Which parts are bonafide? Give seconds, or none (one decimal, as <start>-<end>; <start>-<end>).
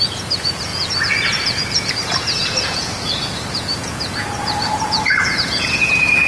none